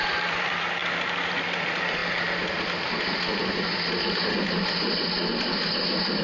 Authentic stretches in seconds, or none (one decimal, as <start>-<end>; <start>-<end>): 0.8-1.4; 2.0-5.7